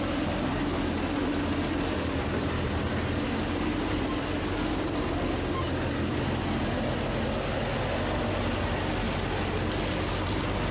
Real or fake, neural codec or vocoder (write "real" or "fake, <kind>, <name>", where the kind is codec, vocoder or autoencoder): real